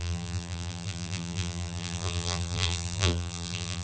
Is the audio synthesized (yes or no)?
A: yes